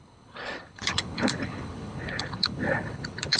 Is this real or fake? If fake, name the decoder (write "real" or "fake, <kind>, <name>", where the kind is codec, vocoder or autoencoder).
fake, codec, HILCodec